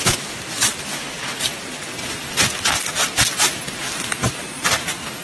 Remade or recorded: recorded